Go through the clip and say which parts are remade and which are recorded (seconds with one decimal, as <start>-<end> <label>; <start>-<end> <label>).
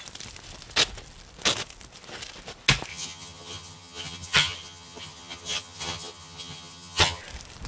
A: 0.0-2.9 recorded; 2.9-7.2 remade; 7.2-7.7 recorded